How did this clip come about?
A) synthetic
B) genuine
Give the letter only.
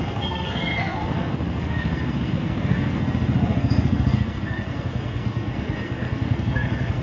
A